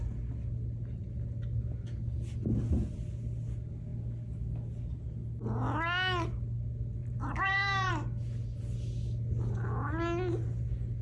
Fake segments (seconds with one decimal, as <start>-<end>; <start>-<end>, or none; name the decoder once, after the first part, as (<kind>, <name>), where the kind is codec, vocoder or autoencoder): 7.0-7.9 (vocoder, BigVGAN v2)